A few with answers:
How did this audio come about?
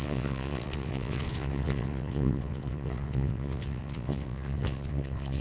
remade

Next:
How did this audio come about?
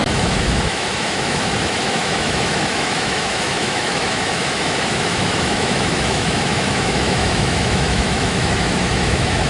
remade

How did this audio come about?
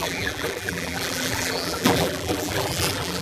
remade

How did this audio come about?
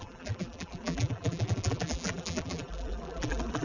remade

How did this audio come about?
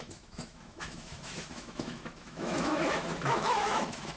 remade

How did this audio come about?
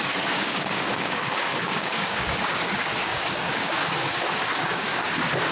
remade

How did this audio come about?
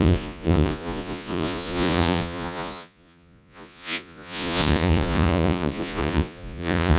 remade